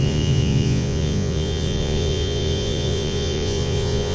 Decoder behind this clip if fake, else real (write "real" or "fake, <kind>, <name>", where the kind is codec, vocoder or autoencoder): fake, vocoder, Vocos